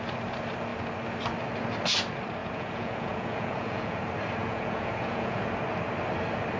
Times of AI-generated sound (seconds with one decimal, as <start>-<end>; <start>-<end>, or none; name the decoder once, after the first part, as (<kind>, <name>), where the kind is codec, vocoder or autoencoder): 2.4-4.0 (vocoder, Vocos); 4.4-5.4